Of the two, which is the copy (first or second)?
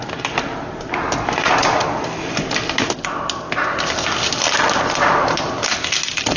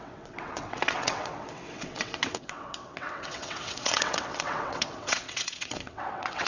second